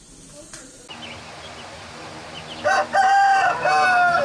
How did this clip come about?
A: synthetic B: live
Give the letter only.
B